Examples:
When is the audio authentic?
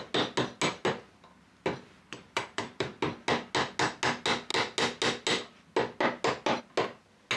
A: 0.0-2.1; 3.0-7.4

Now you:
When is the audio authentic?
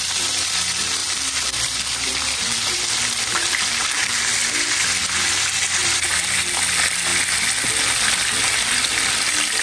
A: 0.0-1.0; 4.2-5.8; 6.6-9.6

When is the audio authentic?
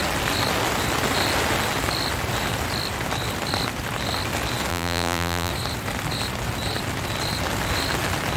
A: 0.0-4.7; 5.5-8.4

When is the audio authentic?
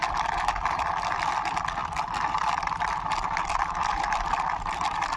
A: 0.0-5.2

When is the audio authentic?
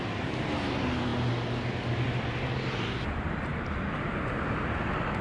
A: 0.0-5.2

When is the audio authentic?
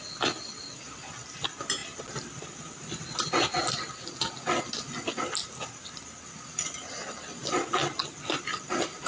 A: 0.0-9.1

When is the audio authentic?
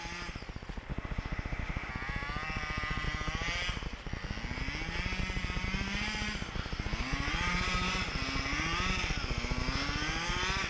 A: 0.0-0.9; 1.9-10.7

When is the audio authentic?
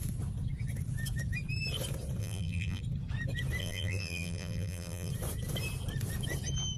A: 0.0-2.2; 2.8-3.6; 5.1-6.8